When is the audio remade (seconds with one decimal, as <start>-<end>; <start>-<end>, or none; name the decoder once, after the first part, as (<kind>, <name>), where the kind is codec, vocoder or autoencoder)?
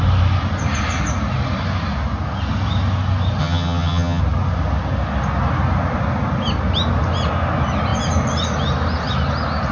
3.4-4.2 (vocoder, HiFi-GAN)